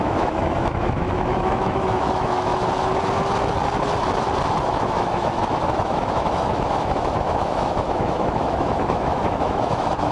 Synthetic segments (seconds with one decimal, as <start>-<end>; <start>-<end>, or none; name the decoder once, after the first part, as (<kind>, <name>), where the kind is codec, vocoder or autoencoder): 0.0-2.5 (autoencoder, DAC-VAE); 4.6-10.1